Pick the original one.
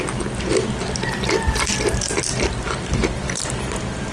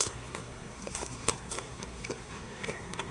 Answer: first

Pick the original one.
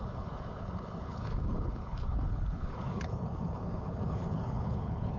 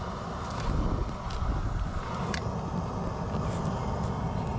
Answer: second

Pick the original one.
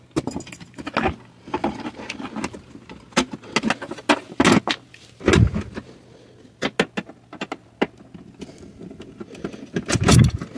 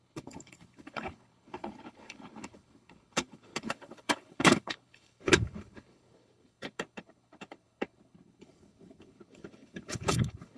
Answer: first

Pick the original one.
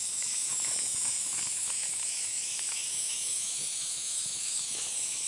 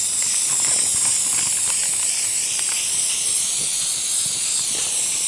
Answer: second